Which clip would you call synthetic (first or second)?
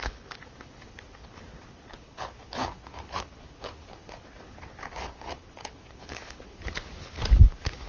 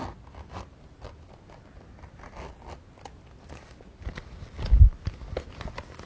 first